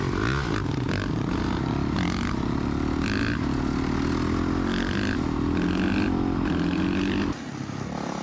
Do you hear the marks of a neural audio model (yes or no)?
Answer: no